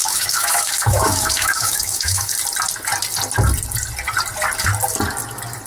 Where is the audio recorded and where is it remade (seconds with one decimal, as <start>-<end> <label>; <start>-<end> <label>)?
0.0-2.3 remade; 2.3-5.7 recorded